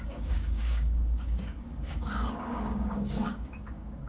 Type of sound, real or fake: fake